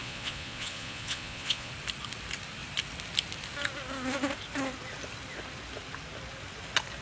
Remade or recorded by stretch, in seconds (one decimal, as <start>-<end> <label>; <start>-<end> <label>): 0.0-1.7 remade; 1.7-7.0 recorded